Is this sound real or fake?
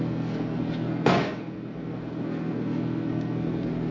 fake